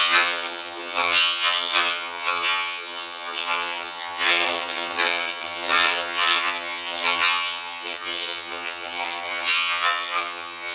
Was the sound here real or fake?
fake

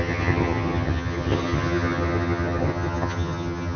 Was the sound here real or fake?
fake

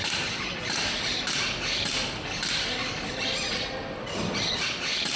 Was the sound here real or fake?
real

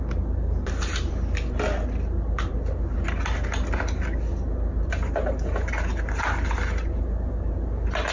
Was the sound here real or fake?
real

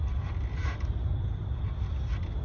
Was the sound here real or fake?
real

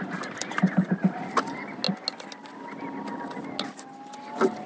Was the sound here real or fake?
real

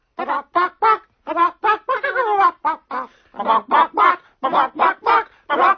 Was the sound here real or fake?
real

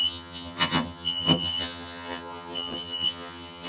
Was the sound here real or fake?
fake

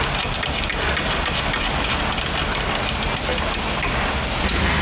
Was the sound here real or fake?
real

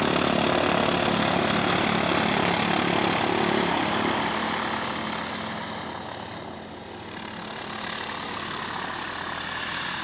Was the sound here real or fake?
real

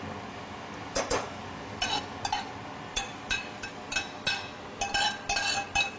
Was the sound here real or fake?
real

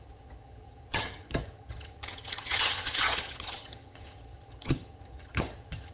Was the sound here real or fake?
fake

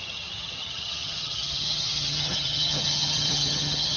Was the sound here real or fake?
fake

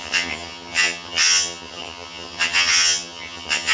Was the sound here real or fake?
fake